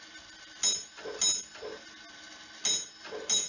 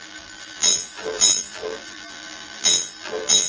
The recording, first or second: first